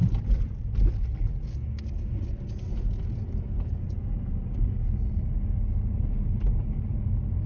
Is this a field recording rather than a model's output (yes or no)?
yes